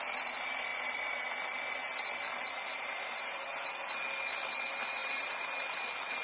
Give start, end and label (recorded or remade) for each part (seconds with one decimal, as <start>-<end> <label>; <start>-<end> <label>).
0.0-0.7 recorded; 0.7-1.3 remade; 1.3-2.7 recorded; 2.7-3.7 remade; 3.7-5.0 recorded; 5.0-5.7 remade; 5.7-6.2 recorded